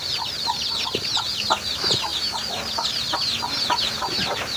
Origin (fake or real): real